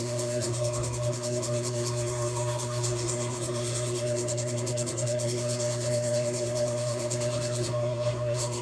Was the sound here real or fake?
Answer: fake